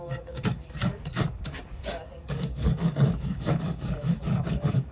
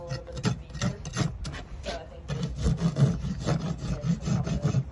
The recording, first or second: second